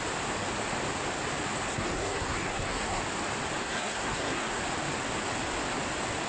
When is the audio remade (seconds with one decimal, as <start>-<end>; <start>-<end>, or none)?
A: 1.7-3.0; 3.6-4.6